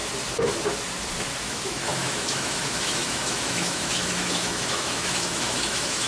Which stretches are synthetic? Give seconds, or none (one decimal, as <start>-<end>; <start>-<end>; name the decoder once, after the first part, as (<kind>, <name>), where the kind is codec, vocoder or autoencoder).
1.4-6.1 (autoencoder, DAC-VAE)